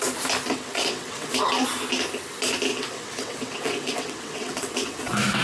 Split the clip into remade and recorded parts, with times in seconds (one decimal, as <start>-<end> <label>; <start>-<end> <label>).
0.0-0.5 recorded; 0.5-1.5 remade; 1.5-2.7 recorded; 2.7-5.0 remade; 5.0-5.4 recorded